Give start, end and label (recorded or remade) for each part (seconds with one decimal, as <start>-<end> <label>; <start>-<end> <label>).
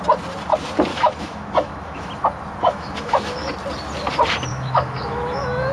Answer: 0.0-0.9 recorded; 0.9-2.1 remade; 2.1-2.6 recorded; 2.6-3.5 remade; 3.5-4.5 recorded; 4.5-5.7 remade